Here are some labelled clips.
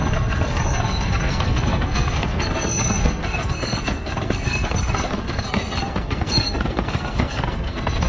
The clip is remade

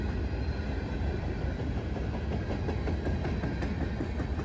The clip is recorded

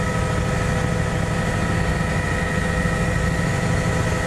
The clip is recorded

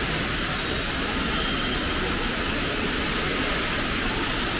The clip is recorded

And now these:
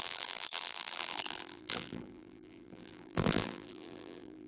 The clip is remade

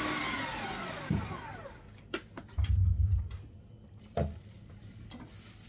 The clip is recorded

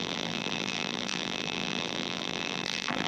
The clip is remade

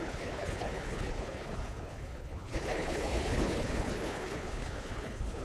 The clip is remade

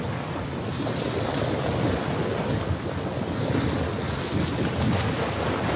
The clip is recorded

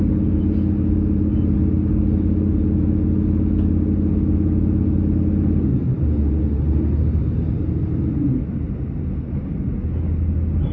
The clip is recorded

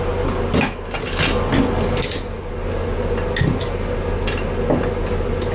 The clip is recorded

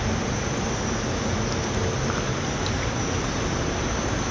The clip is recorded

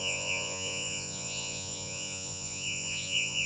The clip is remade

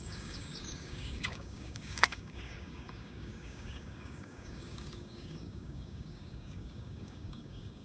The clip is remade